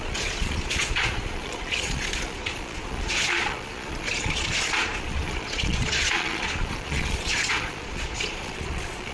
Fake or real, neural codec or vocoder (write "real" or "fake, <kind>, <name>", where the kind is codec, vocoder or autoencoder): fake, vocoder, Vocos